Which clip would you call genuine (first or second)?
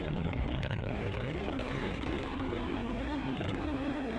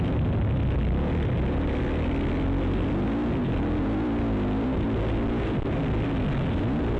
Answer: second